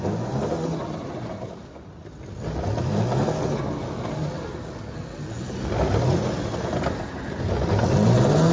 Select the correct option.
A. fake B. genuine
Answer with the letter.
B